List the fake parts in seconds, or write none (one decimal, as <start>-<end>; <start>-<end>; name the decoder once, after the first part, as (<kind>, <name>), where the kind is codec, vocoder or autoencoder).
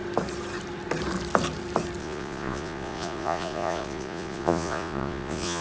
2.0-5.6 (vocoder, Vocos)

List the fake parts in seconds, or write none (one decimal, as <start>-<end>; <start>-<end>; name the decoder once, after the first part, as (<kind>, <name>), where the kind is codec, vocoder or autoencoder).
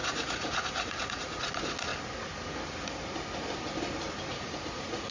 0.0-1.9 (vocoder, Vocos); 4.3-5.1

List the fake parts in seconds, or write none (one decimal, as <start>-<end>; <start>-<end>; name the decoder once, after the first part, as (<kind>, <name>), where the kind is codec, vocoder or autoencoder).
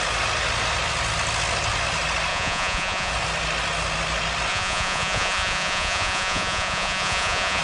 2.3-3.1 (vocoder, Vocos); 4.5-7.6